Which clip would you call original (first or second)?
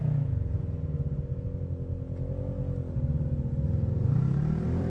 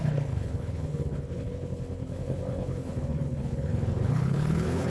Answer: first